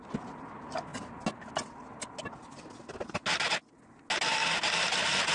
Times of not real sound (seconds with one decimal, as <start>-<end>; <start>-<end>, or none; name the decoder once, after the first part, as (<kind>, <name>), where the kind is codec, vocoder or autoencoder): none